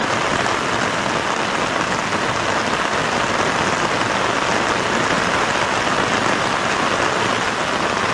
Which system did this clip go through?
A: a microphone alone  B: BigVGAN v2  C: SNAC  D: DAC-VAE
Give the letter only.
A